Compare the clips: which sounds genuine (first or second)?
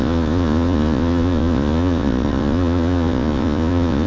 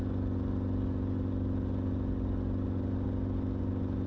second